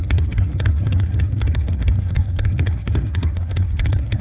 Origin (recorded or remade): remade